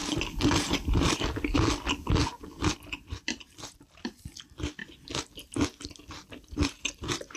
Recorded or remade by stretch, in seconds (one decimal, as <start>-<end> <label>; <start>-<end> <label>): 0.0-4.8 remade; 4.8-6.3 recorded; 6.3-7.4 remade